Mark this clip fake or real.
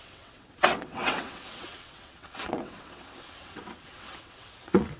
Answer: fake